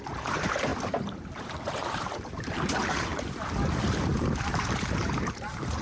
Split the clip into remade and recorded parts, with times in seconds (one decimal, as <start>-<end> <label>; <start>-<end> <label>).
0.0-5.8 remade